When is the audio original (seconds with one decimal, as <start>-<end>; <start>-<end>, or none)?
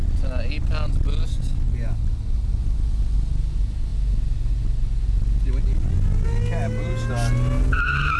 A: 0.0-8.2